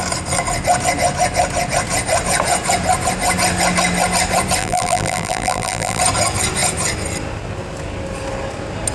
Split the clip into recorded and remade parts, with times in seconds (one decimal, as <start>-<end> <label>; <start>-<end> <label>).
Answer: 0.0-4.6 recorded; 4.6-6.0 remade; 6.0-8.9 recorded